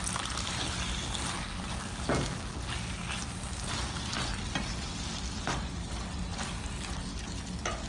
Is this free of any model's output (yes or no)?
yes